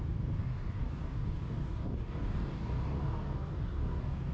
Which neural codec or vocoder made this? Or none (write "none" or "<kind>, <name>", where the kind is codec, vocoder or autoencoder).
codec, DAC